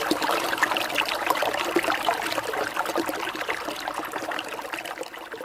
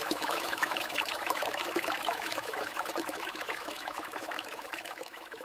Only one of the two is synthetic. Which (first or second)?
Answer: second